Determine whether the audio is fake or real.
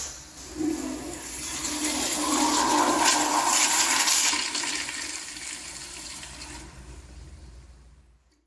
real